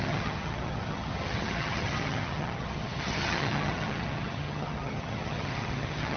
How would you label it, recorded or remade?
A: remade